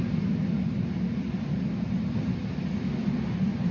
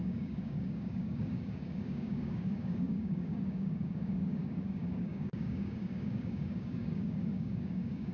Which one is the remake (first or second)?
second